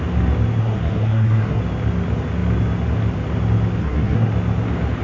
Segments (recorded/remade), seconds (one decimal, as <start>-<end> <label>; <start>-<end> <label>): 0.0-0.6 recorded; 0.6-1.6 remade; 1.6-3.8 recorded; 3.8-4.3 remade; 4.3-5.0 recorded